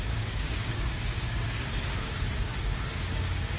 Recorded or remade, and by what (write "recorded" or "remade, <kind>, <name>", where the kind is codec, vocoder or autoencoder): remade, codec, DAC